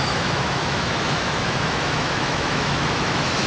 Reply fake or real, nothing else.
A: fake